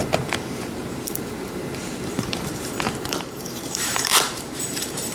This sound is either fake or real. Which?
fake